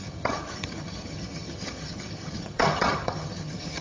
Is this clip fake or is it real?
fake